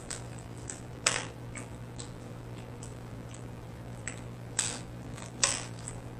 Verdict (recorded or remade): remade